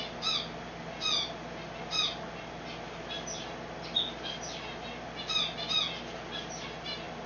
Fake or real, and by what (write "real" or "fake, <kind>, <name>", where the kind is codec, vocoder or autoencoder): real